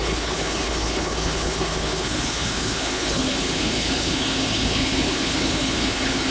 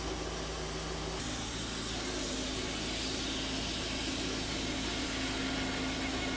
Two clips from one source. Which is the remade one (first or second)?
first